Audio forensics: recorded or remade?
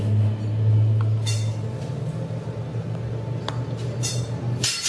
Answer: recorded